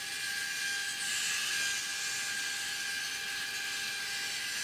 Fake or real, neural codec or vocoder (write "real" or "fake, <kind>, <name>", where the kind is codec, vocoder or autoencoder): real